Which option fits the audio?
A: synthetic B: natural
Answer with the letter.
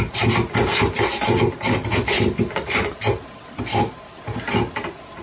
B